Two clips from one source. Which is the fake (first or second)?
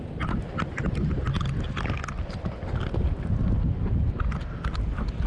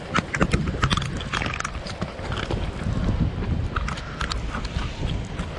second